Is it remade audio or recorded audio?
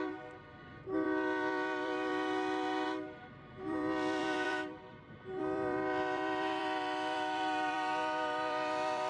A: remade